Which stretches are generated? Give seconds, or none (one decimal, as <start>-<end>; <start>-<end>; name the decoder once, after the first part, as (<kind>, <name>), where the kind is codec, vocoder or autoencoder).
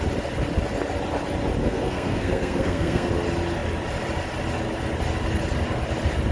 1.6-3.1 (codec, SNAC)